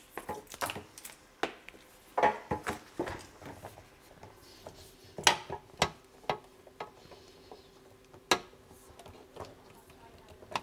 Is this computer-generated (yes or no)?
no